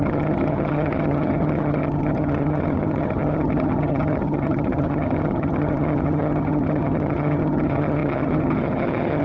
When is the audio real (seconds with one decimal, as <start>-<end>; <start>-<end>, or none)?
none